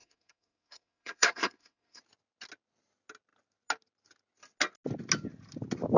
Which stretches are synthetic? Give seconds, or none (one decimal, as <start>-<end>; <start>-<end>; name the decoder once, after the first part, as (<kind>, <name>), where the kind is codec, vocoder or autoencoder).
0.0-2.0 (codec, SNAC)